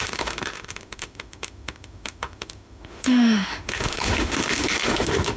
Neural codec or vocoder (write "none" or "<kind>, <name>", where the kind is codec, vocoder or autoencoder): autoencoder, DAC-VAE